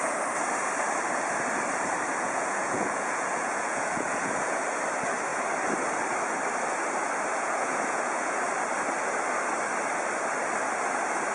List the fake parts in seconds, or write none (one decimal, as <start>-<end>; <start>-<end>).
2.1-4.8; 7.3-8.5